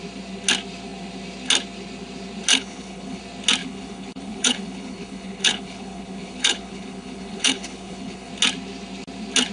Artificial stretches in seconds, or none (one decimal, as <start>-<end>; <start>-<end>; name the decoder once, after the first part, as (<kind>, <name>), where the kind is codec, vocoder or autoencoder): 2.5-3.2 (codec, HILCodec); 3.6-8.3